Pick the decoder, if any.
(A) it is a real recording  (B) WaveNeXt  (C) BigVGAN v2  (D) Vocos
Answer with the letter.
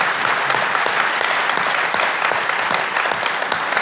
A